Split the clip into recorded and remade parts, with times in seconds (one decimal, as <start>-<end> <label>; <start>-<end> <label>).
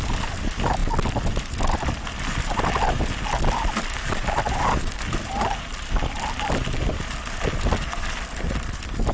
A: 0.0-9.1 recorded